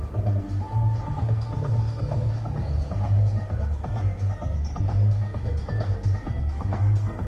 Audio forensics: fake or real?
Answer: fake